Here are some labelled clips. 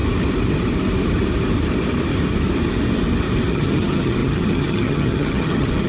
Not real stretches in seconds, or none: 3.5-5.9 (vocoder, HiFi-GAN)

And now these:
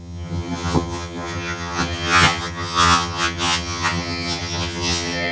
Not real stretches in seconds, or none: 0.0-5.3 (vocoder, HiFi-GAN)

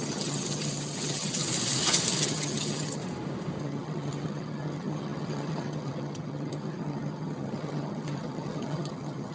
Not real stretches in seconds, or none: 0.0-1.4 (vocoder, HiFi-GAN); 2.2-3.0; 3.6-9.3